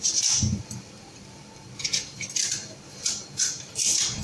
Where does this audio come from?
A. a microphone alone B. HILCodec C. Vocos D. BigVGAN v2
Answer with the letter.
D